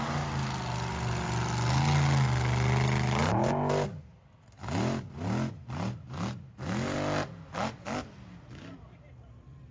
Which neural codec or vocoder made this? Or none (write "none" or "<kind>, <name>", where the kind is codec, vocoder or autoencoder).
none